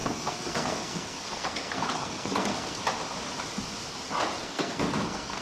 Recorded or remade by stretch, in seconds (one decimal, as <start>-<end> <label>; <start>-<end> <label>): 0.0-2.8 remade; 2.8-4.4 recorded; 4.4-5.4 remade